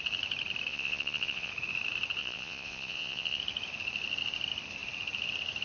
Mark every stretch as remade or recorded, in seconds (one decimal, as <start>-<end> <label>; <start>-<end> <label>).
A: 0.0-0.7 recorded; 0.7-1.5 remade; 1.5-2.2 recorded; 2.2-3.4 remade; 3.4-5.6 recorded